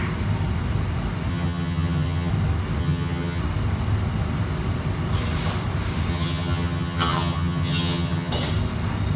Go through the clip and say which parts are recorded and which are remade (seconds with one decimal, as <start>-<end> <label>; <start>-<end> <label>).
0.0-1.3 recorded; 1.3-2.3 remade; 2.3-2.8 recorded; 2.8-3.4 remade; 3.4-6.1 recorded; 6.1-8.3 remade; 8.3-9.2 recorded